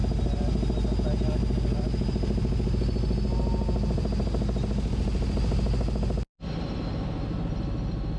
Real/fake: real